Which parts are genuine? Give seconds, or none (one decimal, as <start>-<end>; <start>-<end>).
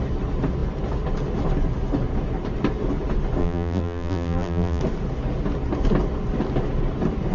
0.0-3.4; 4.8-7.3